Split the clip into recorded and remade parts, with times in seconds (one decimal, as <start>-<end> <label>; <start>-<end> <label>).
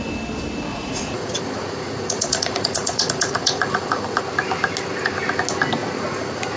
0.0-0.7 recorded; 0.7-4.2 remade; 4.2-5.8 recorded; 5.8-6.6 remade